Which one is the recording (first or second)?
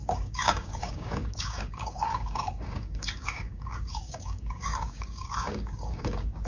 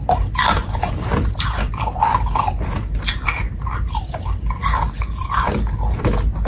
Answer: second